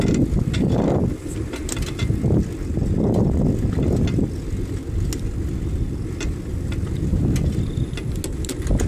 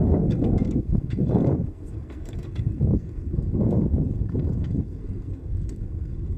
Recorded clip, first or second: first